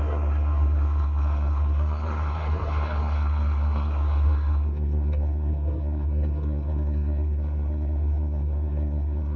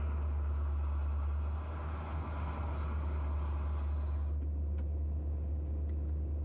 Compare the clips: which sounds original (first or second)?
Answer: second